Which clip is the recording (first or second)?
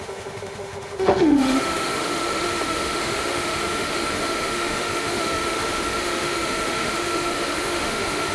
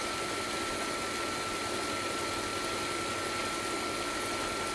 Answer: second